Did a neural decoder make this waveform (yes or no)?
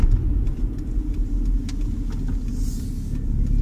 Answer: no